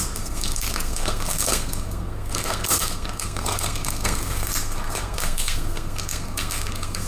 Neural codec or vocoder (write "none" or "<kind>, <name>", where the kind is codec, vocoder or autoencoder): codec, SNAC